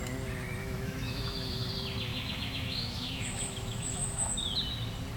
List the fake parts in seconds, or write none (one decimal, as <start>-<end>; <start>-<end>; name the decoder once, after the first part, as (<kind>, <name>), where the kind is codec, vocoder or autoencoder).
0.6-1.7 (autoencoder, DAC-VAE); 2.1-4.3